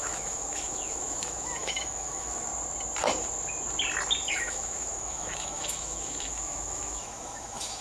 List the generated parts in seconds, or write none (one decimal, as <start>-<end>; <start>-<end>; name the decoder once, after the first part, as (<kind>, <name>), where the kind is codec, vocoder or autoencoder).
0.0-2.5 (autoencoder, DAC-VAE); 4.3-7.8